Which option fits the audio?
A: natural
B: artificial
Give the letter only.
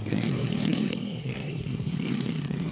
B